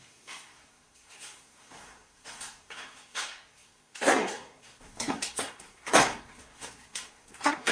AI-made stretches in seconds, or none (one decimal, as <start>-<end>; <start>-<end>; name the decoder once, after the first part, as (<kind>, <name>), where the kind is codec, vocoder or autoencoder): 0.0-7.7 (codec, SNAC)